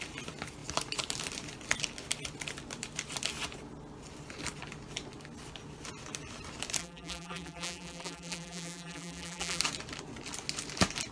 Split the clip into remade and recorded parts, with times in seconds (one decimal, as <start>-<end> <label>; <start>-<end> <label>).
0.0-6.8 recorded; 6.8-9.6 remade; 9.6-11.1 recorded